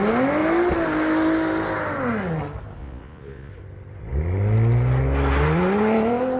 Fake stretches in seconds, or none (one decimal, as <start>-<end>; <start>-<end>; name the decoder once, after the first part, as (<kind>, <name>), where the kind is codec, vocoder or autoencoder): 2.8-3.5 (vocoder, Vocos)